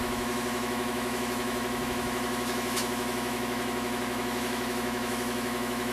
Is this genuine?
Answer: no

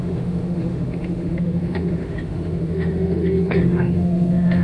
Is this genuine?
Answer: no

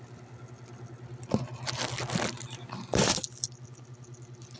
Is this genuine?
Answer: yes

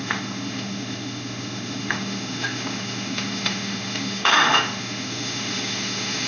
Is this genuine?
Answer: no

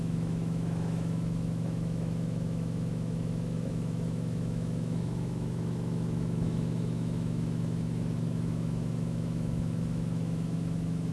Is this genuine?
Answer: no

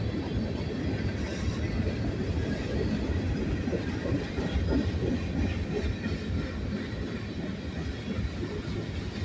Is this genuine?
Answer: yes